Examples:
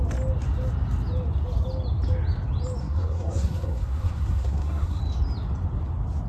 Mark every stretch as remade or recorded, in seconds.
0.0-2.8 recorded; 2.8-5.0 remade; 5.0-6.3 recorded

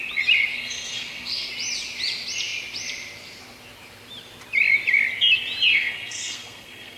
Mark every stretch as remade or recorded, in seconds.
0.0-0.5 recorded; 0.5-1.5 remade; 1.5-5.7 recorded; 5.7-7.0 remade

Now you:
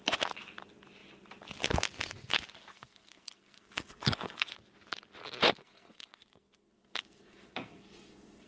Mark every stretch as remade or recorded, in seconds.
0.0-2.7 recorded; 2.7-4.5 remade; 4.5-5.6 recorded; 5.6-8.5 remade